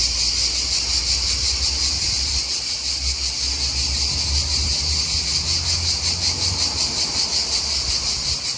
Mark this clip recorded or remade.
recorded